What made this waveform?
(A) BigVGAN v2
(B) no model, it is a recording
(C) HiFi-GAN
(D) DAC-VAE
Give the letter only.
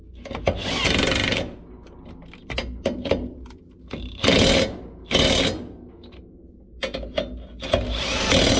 B